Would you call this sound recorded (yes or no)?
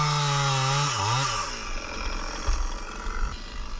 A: yes